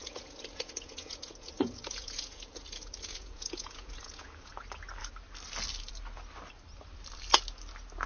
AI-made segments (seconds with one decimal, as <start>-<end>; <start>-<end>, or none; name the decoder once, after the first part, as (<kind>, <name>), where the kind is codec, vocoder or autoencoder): 0.0-4.5 (vocoder, Vocos)